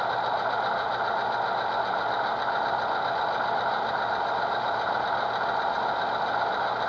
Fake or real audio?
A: real